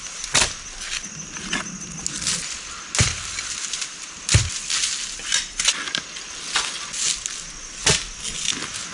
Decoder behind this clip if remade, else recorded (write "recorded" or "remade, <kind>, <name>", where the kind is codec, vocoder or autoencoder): recorded